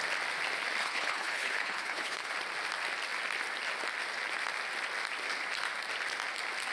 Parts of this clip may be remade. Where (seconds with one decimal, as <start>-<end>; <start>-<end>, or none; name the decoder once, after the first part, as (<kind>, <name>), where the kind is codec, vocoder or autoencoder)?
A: 0.8-2.3 (codec, HILCodec)